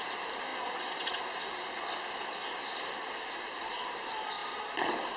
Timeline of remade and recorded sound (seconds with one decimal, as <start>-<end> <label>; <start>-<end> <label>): 0.0-0.5 remade; 0.5-3.2 recorded; 3.2-5.2 remade